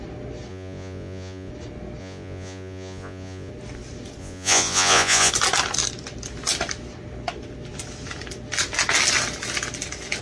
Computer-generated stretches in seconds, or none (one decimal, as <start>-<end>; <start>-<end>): 0.5-1.5; 2.0-3.5; 4.2-5.3